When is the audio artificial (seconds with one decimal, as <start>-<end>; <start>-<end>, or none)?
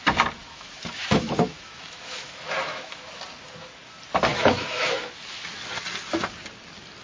0.4-3.2; 4.3-5.1